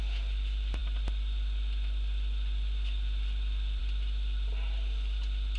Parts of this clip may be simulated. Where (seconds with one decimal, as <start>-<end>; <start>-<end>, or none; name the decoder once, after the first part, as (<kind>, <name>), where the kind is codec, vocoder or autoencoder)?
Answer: none

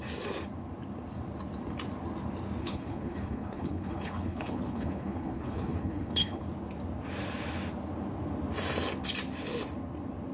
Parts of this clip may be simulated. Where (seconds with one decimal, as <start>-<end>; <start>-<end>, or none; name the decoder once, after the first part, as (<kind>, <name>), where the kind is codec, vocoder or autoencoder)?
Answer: 2.6-6.4 (codec, HILCodec)

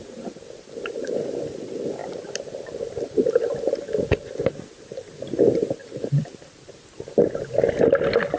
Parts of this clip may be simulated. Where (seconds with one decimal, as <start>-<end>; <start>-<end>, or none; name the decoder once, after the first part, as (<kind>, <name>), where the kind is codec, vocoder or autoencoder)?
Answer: 2.0-3.7 (vocoder, BigVGAN v2)

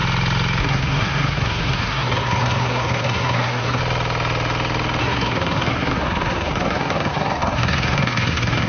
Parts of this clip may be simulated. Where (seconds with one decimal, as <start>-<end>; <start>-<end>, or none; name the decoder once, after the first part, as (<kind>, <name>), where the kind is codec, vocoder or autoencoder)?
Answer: 0.6-3.8 (codec, SNAC); 5.0-8.7

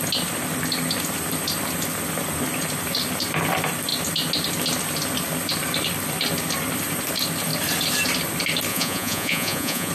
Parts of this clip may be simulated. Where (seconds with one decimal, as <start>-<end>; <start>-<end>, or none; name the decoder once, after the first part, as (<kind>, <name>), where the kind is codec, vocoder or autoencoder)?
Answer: 8.7-9.9 (vocoder, Vocos)

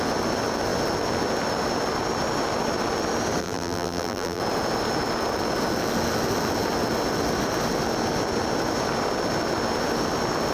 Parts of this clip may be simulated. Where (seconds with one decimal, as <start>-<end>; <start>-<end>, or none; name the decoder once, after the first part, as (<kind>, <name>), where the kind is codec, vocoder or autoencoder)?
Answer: 3.4-4.4 (vocoder, BigVGAN v2)